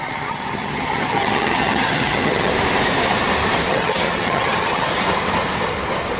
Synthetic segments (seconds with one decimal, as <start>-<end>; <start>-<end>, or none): 0.0-2.5; 3.7-4.9